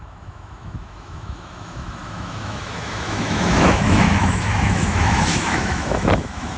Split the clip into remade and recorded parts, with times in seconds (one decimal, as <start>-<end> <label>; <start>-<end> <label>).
0.0-6.6 remade